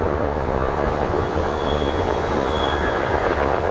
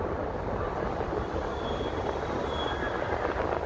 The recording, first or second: second